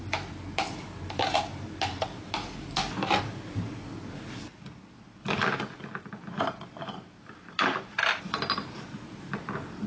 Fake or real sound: real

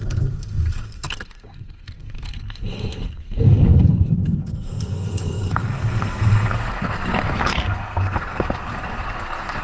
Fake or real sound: fake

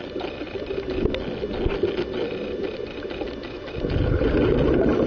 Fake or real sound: real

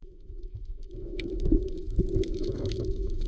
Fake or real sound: fake